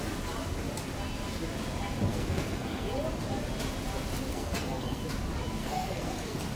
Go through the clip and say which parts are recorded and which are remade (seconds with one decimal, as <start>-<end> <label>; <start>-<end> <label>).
0.0-2.1 recorded; 2.1-2.9 remade; 2.9-4.3 recorded; 4.3-5.0 remade; 5.0-5.6 recorded; 5.6-6.6 remade